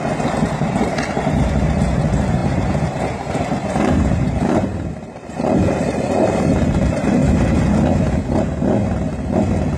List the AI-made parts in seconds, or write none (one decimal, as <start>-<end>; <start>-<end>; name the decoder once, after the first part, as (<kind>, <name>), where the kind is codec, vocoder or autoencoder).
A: 0.0-7.2 (vocoder, BigVGAN v2); 8.3-9.8